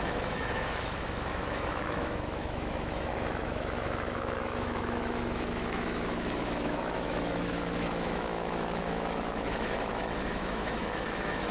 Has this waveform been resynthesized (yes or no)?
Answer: yes